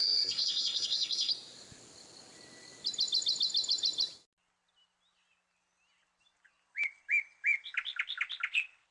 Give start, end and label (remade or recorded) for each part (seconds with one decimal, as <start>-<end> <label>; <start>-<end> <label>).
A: 0.0-1.3 remade; 1.3-8.9 recorded